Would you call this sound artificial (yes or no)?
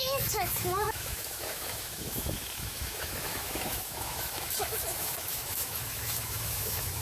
yes